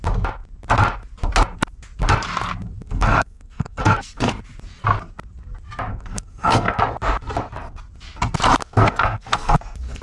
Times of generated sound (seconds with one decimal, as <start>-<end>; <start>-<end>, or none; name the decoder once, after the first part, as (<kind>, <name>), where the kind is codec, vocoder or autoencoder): 2.8-4.3 (codec, SNAC); 5.9-6.8; 8.6-10.0